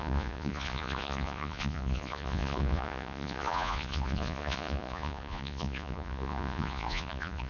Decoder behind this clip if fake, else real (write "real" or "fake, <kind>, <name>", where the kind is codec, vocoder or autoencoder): fake, vocoder, Vocos